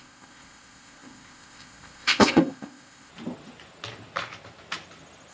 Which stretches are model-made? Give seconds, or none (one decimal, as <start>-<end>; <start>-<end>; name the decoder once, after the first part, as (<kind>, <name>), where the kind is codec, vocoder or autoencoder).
0.0-3.1 (codec, ZipCodec)